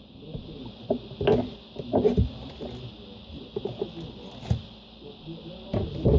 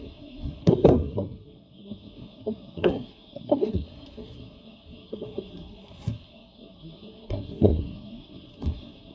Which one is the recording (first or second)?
first